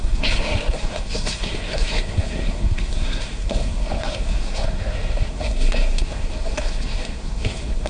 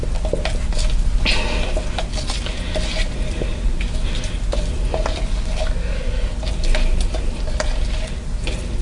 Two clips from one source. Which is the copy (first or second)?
first